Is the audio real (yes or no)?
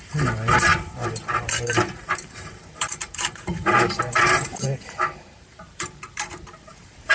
no